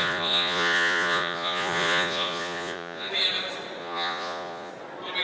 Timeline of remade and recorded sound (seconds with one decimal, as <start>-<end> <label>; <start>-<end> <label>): 0.0-3.1 remade; 3.1-3.8 recorded; 3.8-4.7 remade; 4.7-5.2 recorded